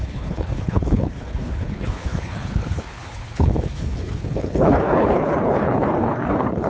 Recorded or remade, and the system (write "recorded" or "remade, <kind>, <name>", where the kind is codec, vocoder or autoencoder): remade, codec, HILCodec